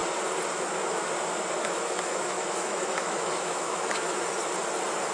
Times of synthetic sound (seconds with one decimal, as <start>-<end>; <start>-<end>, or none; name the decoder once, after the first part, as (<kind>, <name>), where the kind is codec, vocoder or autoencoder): 1.6-4.2 (autoencoder, DAC-VAE)